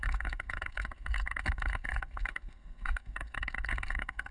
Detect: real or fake fake